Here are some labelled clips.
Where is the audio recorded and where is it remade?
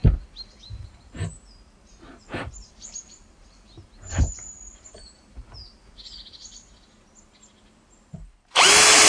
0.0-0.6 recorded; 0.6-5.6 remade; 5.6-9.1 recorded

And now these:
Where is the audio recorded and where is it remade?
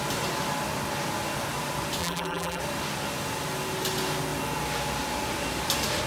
0.0-2.0 recorded; 2.0-2.6 remade; 2.6-6.1 recorded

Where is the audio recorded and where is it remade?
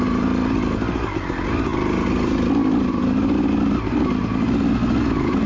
0.0-5.5 recorded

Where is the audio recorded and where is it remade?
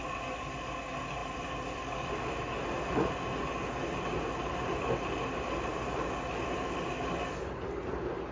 0.0-1.2 recorded; 1.2-2.1 remade; 2.1-8.3 recorded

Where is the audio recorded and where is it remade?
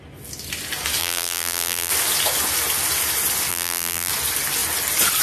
0.0-1.0 recorded; 1.0-1.9 remade; 1.9-3.5 recorded; 3.5-4.1 remade; 4.1-5.2 recorded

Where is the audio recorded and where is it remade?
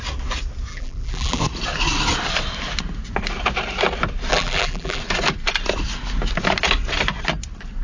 0.0-0.7 recorded; 0.7-1.4 remade; 1.4-4.3 recorded; 4.3-5.0 remade; 5.0-7.8 recorded